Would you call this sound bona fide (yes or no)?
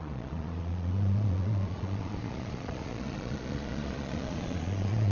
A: no